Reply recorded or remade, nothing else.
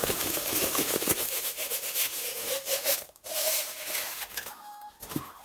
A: remade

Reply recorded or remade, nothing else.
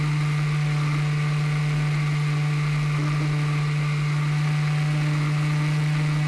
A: recorded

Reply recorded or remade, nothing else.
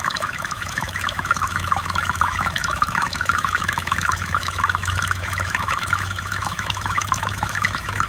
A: remade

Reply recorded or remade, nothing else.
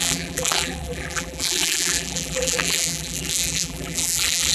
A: remade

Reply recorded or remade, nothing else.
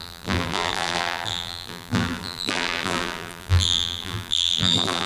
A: remade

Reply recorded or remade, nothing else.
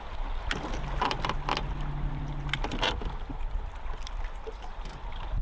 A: recorded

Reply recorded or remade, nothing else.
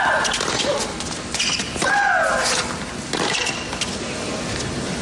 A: recorded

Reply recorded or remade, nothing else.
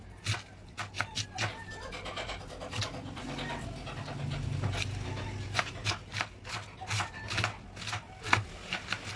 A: recorded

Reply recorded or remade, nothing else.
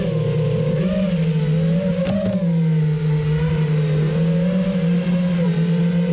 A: recorded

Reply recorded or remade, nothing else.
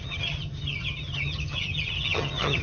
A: remade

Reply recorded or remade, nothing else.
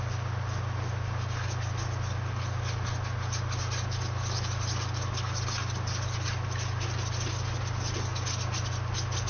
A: recorded